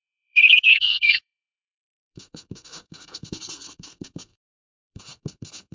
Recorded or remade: remade